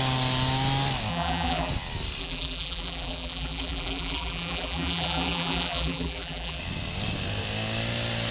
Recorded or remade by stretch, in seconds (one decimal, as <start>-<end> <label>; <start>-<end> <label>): 0.0-1.1 recorded; 1.1-1.7 remade; 1.7-2.2 recorded; 2.2-6.6 remade; 6.6-8.3 recorded